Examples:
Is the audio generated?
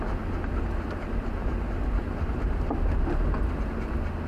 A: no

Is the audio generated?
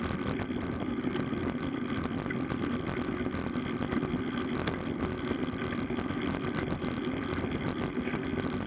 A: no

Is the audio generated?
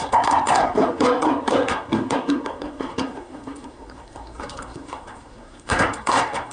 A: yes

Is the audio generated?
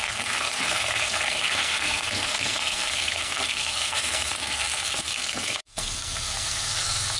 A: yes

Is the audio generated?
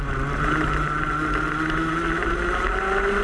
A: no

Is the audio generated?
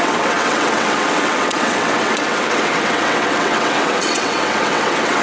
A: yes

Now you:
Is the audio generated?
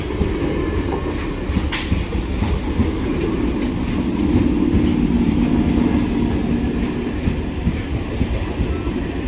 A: no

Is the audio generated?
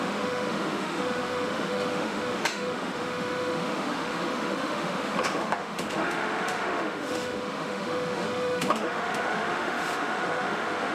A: yes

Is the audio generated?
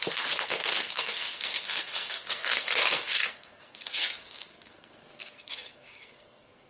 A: yes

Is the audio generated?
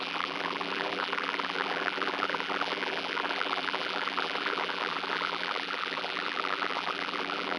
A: yes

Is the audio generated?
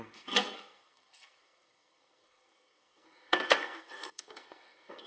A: yes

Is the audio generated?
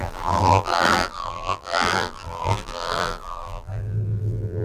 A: yes